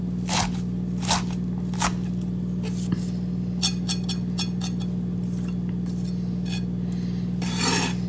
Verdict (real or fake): real